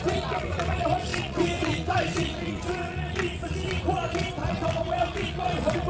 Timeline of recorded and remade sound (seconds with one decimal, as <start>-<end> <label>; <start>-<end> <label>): 0.0-5.9 remade